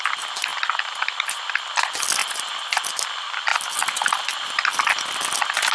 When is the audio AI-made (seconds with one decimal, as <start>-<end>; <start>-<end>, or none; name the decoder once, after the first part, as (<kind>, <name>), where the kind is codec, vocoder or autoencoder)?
none